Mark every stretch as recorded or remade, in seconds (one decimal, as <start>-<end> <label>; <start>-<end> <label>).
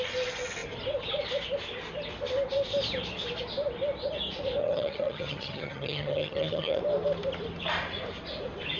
0.0-4.6 recorded; 4.6-6.8 remade; 6.8-8.8 recorded